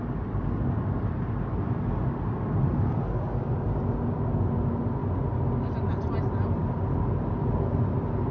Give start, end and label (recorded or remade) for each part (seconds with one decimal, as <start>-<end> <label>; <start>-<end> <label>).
0.0-8.3 recorded